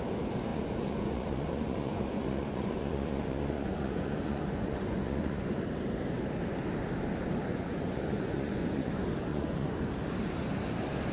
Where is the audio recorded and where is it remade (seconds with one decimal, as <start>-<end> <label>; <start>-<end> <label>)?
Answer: 0.0-0.5 recorded; 0.5-5.6 remade; 5.6-7.5 recorded; 7.5-8.9 remade; 8.9-9.3 recorded; 9.3-9.8 remade; 9.8-11.1 recorded